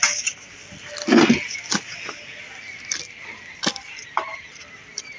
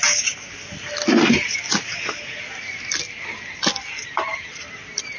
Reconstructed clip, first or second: first